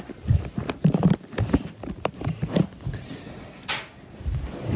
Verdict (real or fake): real